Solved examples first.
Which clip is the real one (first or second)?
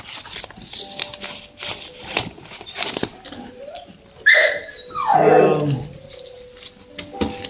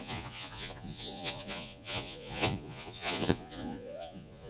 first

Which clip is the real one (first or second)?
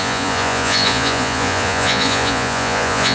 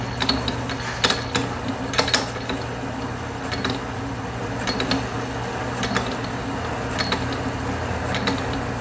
second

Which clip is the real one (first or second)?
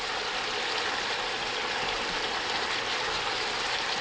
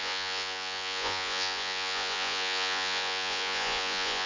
first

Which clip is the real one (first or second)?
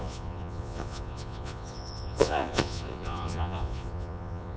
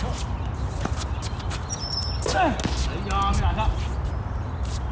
second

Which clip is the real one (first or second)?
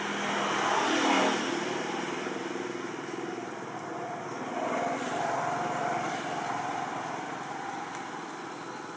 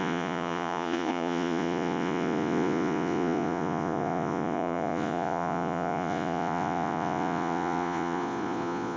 first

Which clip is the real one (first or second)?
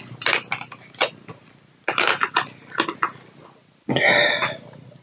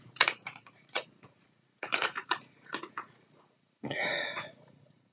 first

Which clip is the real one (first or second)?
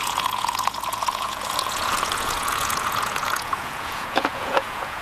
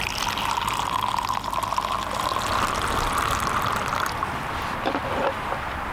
second